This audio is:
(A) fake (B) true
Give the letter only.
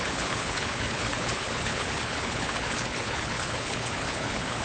A